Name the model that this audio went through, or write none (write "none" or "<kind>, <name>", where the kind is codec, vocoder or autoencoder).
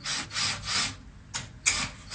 none